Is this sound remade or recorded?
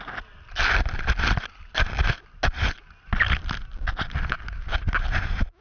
recorded